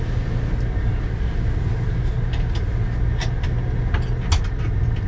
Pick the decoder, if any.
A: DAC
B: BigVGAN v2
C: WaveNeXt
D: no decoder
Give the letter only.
D